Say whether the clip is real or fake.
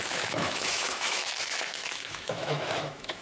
fake